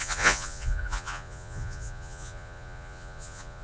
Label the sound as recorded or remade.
remade